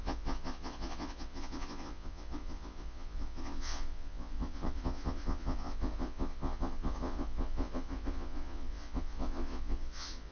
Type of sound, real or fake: fake